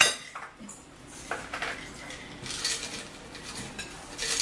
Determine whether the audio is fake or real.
real